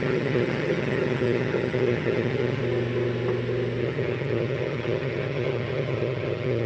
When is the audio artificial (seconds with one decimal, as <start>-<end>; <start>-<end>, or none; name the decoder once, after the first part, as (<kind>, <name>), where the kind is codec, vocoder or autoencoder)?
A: 0.0-2.6 (vocoder, HiFi-GAN); 3.8-6.7